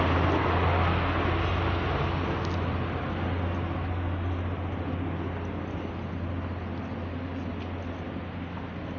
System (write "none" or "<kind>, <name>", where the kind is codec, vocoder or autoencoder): none